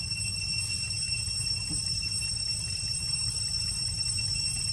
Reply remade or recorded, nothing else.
recorded